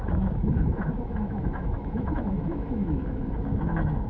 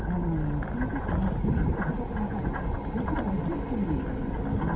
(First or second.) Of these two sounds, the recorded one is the second